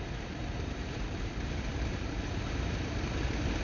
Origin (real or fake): fake